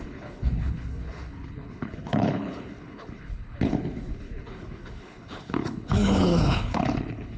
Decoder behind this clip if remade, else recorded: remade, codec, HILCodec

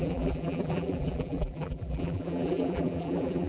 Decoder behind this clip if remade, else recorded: remade, vocoder, BigVGAN v2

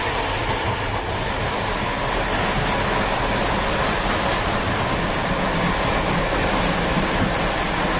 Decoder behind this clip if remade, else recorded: recorded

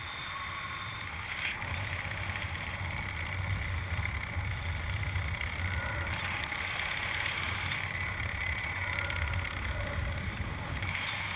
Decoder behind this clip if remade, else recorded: recorded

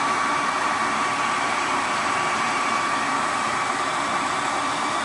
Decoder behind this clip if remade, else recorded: remade, vocoder, BigVGAN v2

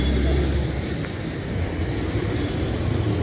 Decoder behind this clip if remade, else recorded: recorded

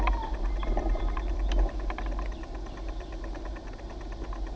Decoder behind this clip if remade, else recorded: recorded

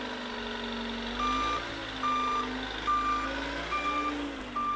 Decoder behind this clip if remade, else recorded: recorded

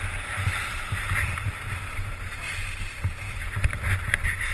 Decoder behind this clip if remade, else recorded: recorded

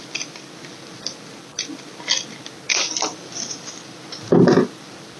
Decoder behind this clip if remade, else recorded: recorded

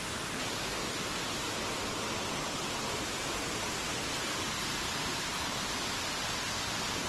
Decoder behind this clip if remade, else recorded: recorded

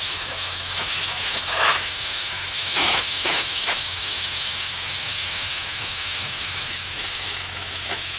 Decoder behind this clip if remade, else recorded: remade, autoencoder, DAC-VAE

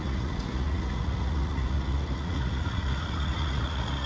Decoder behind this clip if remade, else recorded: remade, vocoder, Vocos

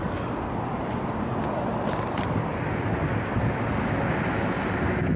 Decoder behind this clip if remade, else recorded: recorded